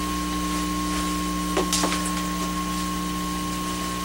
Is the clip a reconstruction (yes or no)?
no